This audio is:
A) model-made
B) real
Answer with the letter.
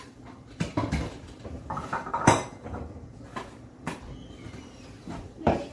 A